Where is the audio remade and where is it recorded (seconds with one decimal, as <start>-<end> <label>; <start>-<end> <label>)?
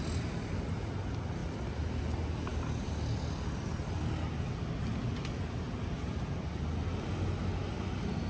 0.0-8.3 recorded